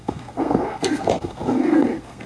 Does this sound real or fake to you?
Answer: fake